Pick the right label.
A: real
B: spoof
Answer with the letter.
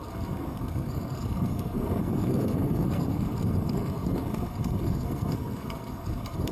B